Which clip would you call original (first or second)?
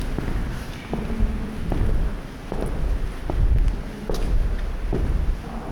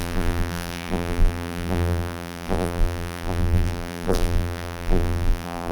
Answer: first